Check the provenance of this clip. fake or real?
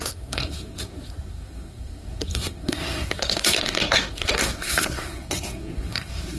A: fake